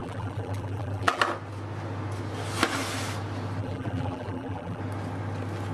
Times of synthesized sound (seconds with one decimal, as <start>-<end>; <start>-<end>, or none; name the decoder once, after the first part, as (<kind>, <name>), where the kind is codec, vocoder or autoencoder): 0.0-1.2 (vocoder, BigVGAN v2); 3.6-4.8